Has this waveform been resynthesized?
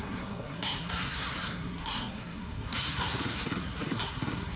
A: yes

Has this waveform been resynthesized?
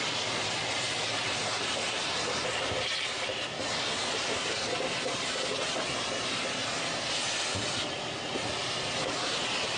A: no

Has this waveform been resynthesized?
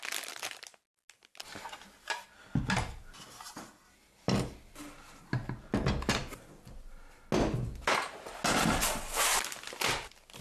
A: no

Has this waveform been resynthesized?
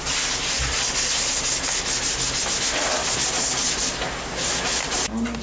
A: no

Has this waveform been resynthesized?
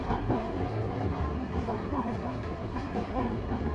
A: yes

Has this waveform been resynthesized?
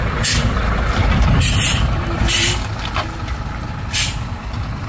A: no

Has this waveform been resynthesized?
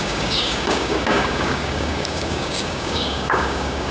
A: yes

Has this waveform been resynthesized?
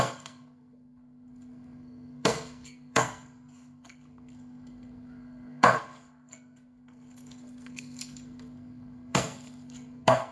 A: yes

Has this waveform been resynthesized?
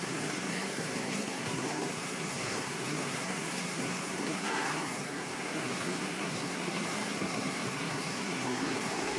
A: yes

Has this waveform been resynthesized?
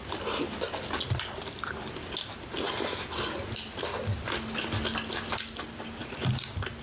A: no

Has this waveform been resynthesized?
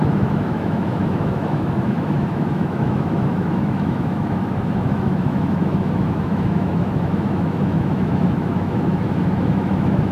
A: yes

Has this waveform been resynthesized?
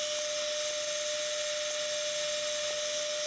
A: no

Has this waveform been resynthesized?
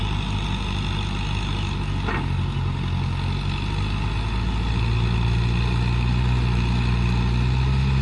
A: no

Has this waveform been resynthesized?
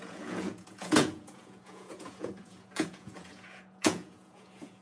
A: yes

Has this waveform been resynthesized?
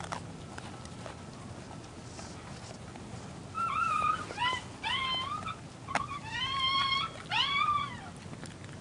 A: no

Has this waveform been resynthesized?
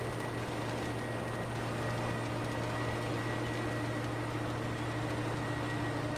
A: no